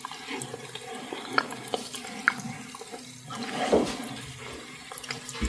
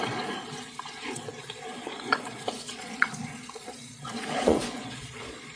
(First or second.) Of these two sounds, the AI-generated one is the second